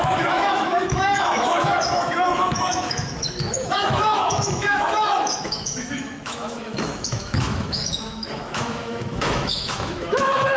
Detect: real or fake fake